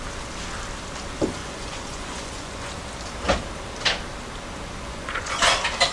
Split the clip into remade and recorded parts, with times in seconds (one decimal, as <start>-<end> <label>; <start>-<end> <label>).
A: 0.0-1.4 recorded; 1.4-2.7 remade; 2.7-4.8 recorded; 4.8-5.4 remade; 5.4-5.9 recorded